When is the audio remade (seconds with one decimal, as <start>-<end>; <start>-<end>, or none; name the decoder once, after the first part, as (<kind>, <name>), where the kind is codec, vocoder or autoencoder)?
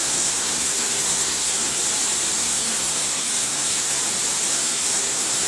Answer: 0.0-1.8 (codec, SNAC); 2.4-4.0; 4.4-5.5